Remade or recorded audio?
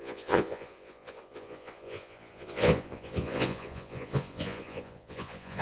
remade